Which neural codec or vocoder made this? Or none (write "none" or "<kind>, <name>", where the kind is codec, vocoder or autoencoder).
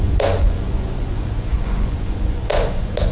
vocoder, Vocos